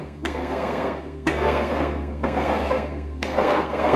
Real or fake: fake